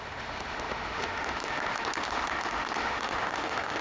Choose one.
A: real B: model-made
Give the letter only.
B